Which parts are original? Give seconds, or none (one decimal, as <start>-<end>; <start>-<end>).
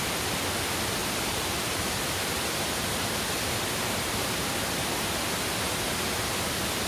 0.0-1.0; 2.0-6.9